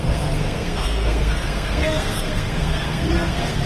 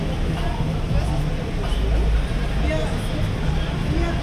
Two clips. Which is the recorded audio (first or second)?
second